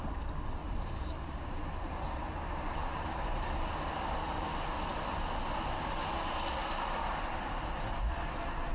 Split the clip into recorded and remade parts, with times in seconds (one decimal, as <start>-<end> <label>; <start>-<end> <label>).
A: 0.0-0.6 recorded; 0.6-3.4 remade; 3.4-8.7 recorded